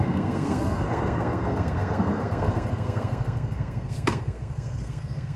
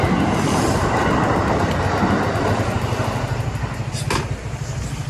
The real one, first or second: second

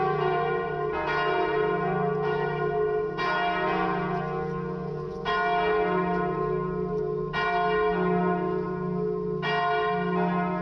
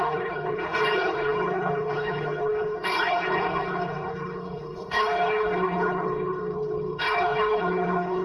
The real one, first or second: first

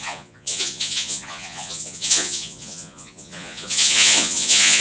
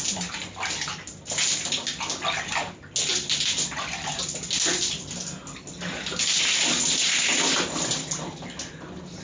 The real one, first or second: second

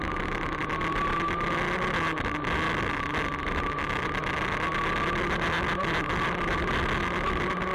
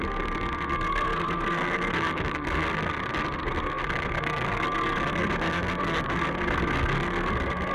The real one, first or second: first